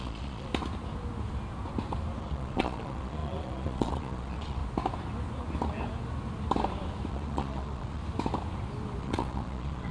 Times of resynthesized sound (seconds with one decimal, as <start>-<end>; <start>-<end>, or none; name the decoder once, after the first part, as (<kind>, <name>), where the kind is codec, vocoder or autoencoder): 0.0-0.5 (vocoder, Vocos); 2.2-4.6; 7.1-8.0; 9.0-9.9